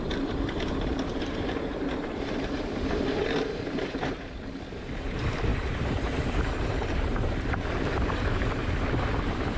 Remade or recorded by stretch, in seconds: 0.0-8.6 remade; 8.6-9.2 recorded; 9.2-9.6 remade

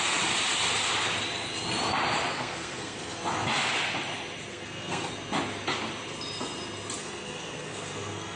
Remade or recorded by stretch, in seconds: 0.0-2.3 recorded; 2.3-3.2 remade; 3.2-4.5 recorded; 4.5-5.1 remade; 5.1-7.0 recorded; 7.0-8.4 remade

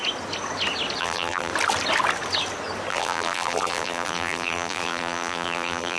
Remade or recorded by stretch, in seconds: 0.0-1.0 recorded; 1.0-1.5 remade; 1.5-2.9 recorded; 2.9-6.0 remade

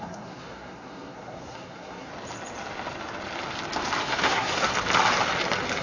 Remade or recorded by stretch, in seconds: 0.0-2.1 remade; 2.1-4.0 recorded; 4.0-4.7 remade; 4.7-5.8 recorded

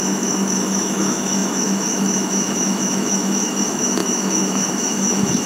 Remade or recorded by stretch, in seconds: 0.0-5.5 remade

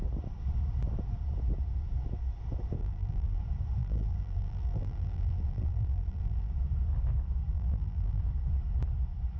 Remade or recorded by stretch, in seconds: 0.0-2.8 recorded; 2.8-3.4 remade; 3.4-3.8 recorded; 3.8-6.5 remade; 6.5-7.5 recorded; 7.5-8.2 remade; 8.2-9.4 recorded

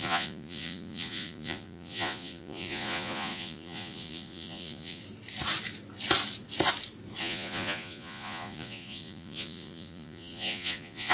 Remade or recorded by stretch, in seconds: 0.0-5.0 remade; 5.0-7.2 recorded; 7.2-11.1 remade

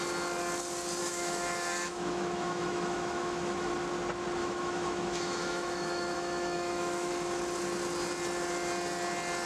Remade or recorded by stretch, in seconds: 0.0-1.0 recorded; 1.0-3.7 remade; 3.7-4.4 recorded; 4.4-7.1 remade; 7.1-9.5 recorded